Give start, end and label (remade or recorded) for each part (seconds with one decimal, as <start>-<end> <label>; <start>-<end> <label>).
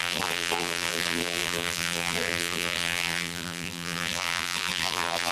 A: 0.0-5.3 remade